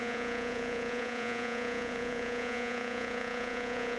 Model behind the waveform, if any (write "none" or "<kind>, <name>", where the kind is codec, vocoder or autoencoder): vocoder, Vocos